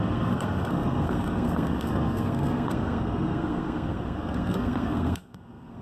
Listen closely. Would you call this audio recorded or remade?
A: remade